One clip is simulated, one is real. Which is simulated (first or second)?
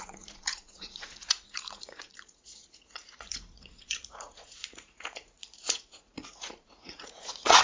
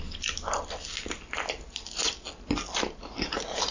first